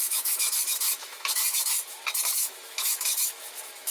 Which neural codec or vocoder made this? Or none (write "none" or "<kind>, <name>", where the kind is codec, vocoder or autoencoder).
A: autoencoder, DAC-VAE